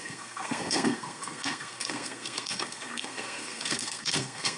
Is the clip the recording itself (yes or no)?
no